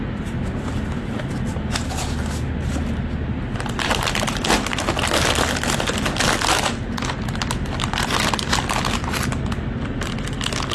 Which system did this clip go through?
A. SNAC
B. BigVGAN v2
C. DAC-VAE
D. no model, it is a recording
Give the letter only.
D